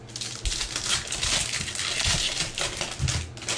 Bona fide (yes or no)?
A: yes